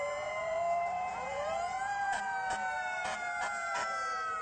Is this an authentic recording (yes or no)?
no